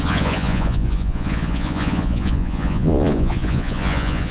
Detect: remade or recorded remade